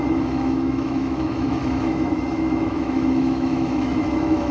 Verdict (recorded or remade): remade